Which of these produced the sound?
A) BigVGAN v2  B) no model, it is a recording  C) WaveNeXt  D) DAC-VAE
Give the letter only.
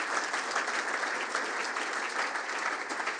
B